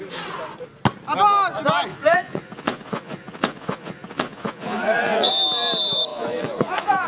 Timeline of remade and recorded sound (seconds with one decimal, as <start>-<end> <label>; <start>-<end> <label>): 0.0-1.9 recorded; 1.9-5.3 remade; 5.3-6.1 recorded; 6.1-7.1 remade